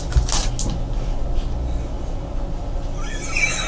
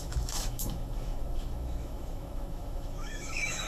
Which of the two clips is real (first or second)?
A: first